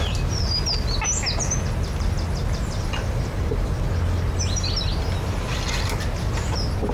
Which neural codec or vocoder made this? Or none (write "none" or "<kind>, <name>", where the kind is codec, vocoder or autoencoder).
none